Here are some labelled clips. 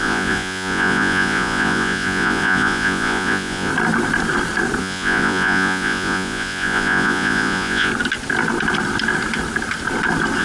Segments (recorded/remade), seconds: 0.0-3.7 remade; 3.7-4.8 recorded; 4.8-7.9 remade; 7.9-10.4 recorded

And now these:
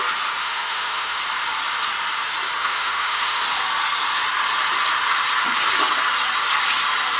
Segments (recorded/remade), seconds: 0.0-0.4 recorded; 0.4-1.2 remade; 1.2-2.6 recorded; 2.6-3.4 remade; 3.4-7.2 recorded

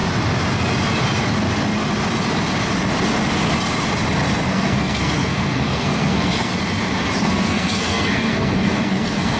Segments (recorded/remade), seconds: 0.0-4.5 recorded; 4.5-6.5 remade; 6.5-7.2 recorded; 7.2-9.4 remade

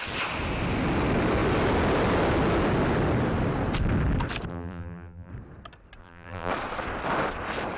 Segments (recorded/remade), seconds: 0.0-4.5 recorded; 4.5-5.3 remade; 5.3-6.0 recorded; 6.0-6.5 remade; 6.5-7.8 recorded

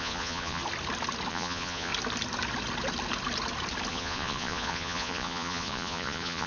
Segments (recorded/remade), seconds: 0.0-0.6 remade; 0.6-1.3 recorded; 1.3-1.9 remade; 1.9-3.9 recorded; 3.9-6.5 remade

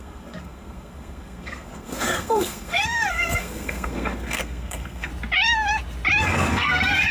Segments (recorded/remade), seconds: 0.0-5.1 remade; 5.1-6.2 recorded; 6.2-7.1 remade

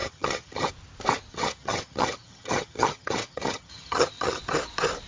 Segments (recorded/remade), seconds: 0.0-0.7 remade; 0.7-1.3 recorded; 1.3-4.4 remade; 4.4-5.1 recorded